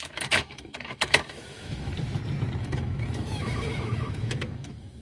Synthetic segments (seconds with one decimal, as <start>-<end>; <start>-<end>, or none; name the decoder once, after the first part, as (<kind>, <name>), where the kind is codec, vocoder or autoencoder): 0.0-1.9 (autoencoder, DAC-VAE); 2.6-5.0